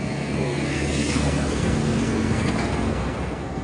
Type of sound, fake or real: fake